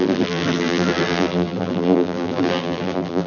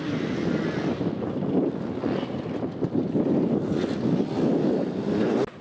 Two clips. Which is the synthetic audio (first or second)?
first